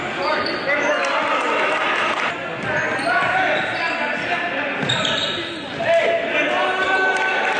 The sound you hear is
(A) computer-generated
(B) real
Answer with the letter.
B